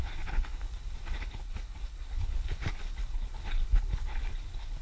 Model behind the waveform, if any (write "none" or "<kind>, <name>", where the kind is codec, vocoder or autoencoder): codec, HILCodec